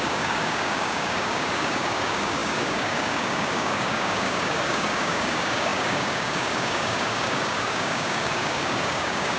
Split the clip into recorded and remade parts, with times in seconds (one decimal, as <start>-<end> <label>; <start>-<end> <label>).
0.0-9.4 remade